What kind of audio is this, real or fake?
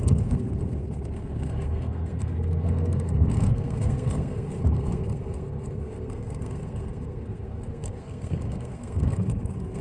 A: fake